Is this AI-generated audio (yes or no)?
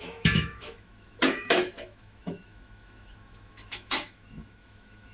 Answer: yes